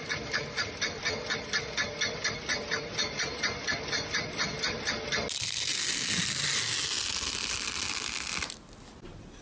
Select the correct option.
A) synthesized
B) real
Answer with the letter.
B